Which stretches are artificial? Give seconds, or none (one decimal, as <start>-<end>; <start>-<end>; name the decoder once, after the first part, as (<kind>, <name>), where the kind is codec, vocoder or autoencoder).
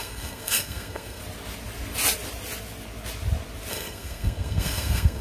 0.0-1.2 (codec, SNAC); 3.7-5.2